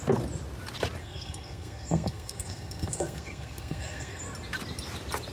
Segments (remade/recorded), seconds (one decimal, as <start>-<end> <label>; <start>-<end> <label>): 0.0-1.0 recorded; 1.0-4.2 remade; 4.2-5.3 recorded